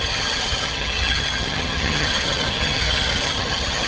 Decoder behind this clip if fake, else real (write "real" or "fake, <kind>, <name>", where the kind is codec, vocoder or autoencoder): fake, vocoder, HiFi-GAN